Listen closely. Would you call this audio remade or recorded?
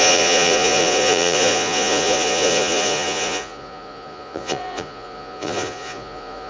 remade